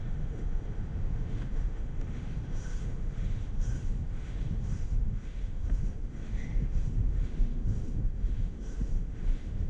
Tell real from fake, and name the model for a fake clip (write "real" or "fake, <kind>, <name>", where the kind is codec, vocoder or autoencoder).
fake, autoencoder, DAC-VAE